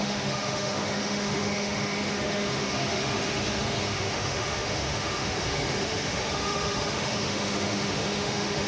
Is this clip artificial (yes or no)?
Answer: yes